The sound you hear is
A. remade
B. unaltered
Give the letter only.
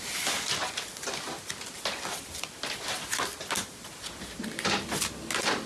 B